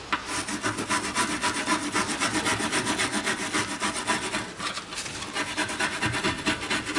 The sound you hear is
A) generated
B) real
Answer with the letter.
B